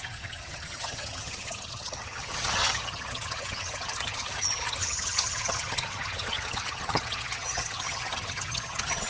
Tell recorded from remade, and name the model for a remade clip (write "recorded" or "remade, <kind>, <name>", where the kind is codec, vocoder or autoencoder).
remade, vocoder, HiFi-GAN